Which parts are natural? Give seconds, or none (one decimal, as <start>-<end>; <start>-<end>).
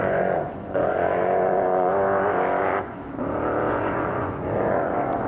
1.9-2.6; 3.0-3.7